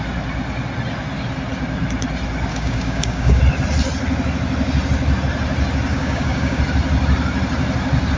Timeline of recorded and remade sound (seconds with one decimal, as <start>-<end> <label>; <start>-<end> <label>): 0.0-2.5 recorded; 2.5-3.4 remade; 3.4-5.9 recorded; 5.9-6.6 remade; 6.6-8.2 recorded